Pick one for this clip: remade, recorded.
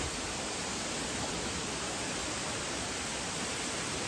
recorded